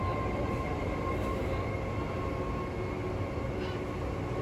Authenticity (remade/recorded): recorded